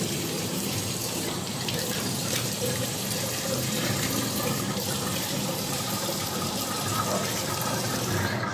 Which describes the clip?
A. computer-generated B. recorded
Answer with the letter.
A